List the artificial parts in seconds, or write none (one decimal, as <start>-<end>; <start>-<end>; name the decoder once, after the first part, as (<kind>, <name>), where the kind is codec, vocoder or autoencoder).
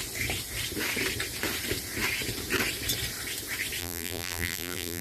3.8-5.0 (vocoder, BigVGAN v2)